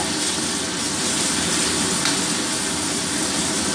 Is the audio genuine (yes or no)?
yes